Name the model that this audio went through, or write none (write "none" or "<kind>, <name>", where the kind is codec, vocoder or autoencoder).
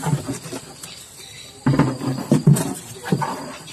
vocoder, BigVGAN v2